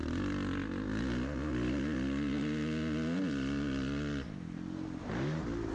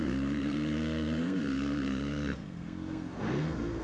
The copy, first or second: second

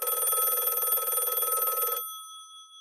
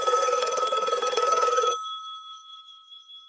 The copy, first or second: second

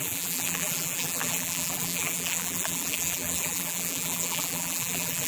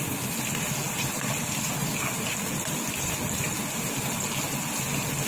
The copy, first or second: first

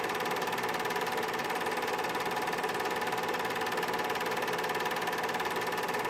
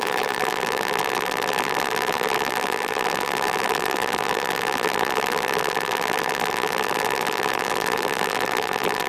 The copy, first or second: second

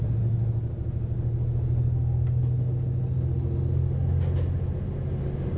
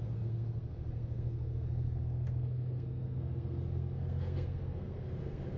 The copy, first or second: second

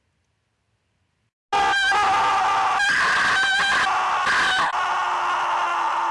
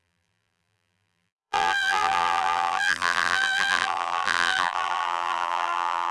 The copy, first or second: second